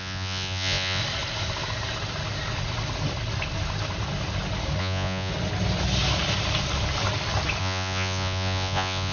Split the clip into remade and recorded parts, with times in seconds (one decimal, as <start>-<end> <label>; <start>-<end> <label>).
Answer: 0.0-1.0 remade; 1.0-4.8 recorded; 4.8-5.3 remade; 5.3-7.6 recorded; 7.6-9.1 remade